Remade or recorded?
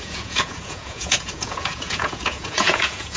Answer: remade